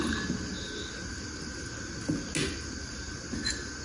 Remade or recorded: recorded